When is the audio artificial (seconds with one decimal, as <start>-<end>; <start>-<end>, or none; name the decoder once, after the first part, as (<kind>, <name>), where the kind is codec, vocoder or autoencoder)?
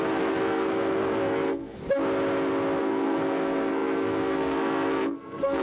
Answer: 0.0-1.8 (codec, SNAC); 2.8-5.6